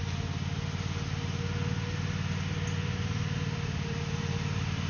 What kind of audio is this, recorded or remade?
recorded